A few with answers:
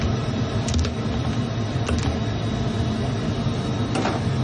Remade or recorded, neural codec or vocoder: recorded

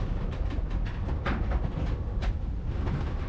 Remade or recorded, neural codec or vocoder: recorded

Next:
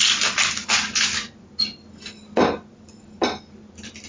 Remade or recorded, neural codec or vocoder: recorded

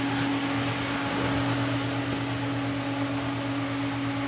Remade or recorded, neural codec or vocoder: recorded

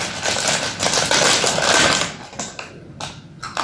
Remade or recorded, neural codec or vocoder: recorded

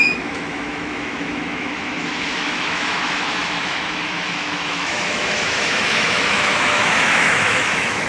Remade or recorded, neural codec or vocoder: remade, autoencoder, DAC-VAE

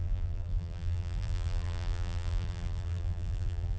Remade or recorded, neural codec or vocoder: remade, vocoder, BigVGAN v2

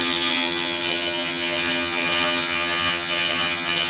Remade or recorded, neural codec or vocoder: remade, vocoder, HiFi-GAN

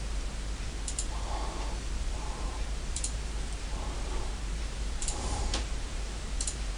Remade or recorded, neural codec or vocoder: remade, vocoder, BigVGAN v2